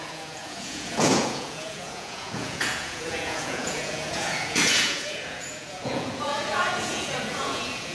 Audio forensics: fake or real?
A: fake